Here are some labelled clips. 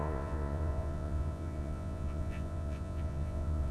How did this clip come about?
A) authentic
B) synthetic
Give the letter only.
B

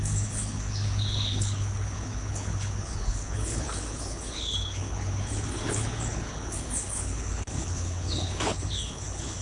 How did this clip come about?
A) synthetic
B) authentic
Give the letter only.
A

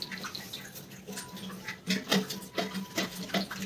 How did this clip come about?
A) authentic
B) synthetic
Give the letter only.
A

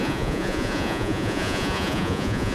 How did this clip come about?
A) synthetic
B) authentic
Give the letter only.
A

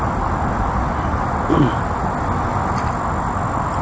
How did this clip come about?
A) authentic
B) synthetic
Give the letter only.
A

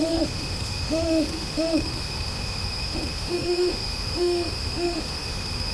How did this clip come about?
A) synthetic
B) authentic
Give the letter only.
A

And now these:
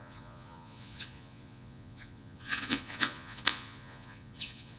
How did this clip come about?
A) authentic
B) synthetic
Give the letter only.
B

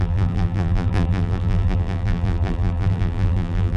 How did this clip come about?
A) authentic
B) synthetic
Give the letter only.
B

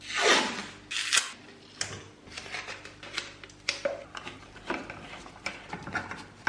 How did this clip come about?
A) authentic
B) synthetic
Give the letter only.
A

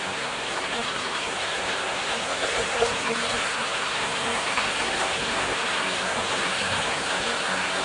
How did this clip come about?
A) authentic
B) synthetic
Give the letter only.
B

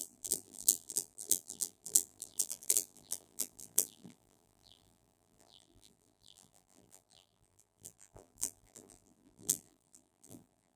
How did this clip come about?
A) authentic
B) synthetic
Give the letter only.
B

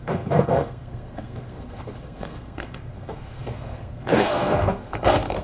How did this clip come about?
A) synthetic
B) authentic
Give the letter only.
A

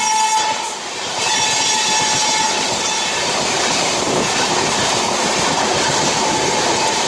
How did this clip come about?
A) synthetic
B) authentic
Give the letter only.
A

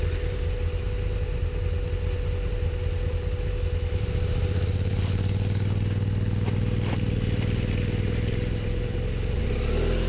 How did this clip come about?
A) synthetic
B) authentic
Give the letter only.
B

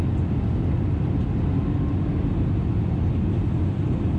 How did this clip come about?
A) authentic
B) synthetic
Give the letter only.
A